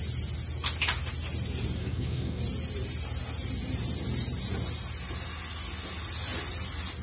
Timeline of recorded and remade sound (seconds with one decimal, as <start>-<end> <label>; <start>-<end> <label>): 0.0-1.8 recorded; 1.8-2.4 remade; 2.4-7.0 recorded